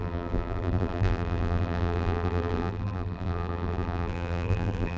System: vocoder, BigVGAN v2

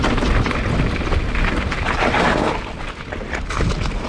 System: none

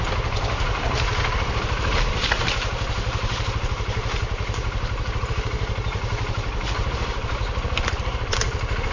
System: vocoder, BigVGAN v2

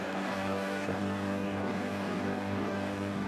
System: codec, DAC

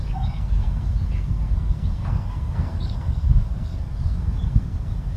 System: codec, SNAC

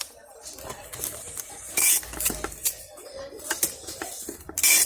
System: vocoder, BigVGAN v2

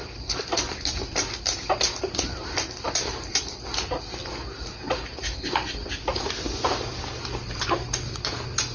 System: none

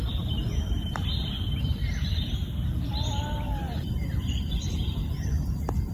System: vocoder, BigVGAN v2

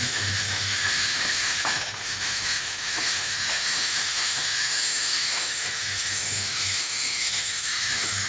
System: autoencoder, DAC-VAE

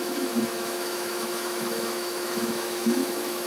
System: autoencoder, DAC-VAE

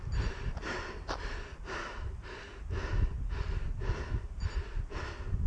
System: none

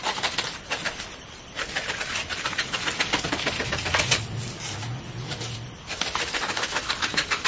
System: none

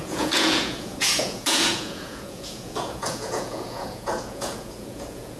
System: vocoder, Vocos